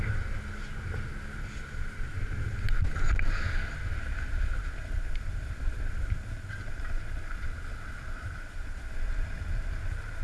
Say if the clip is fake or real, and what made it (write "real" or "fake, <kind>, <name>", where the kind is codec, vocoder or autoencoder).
real